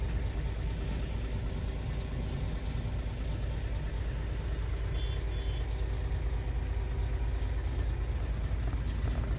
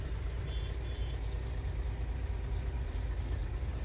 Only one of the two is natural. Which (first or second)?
first